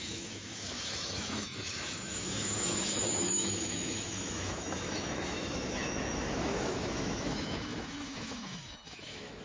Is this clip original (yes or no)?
no